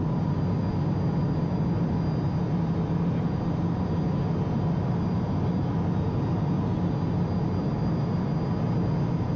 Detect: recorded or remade recorded